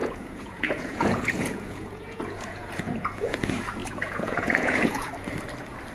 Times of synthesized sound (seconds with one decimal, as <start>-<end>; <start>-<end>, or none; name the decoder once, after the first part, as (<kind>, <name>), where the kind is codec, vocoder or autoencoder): 0.0-3.4 (vocoder, Vocos); 3.8-5.1